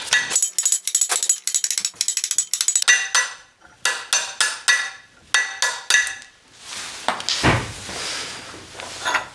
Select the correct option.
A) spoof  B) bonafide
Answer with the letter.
B